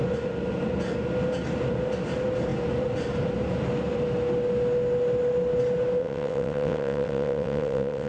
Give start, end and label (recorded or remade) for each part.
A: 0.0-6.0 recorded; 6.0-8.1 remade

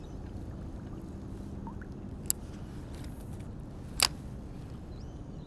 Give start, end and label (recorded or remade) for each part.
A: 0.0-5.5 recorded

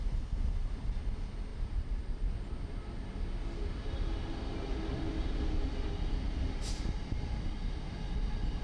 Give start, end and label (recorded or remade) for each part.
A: 0.0-1.5 recorded; 1.5-2.3 remade; 2.3-8.6 recorded

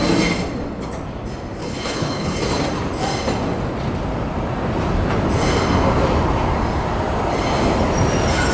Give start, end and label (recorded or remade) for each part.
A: 0.0-1.6 recorded; 1.6-2.4 remade; 2.4-8.5 recorded